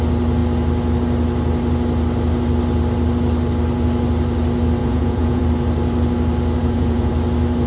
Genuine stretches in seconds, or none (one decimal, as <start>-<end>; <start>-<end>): 0.0-4.8; 5.4-6.6; 7.1-7.7